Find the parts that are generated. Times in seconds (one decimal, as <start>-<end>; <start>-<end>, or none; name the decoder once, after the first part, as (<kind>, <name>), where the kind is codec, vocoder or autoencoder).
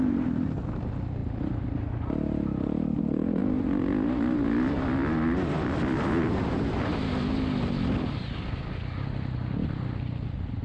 none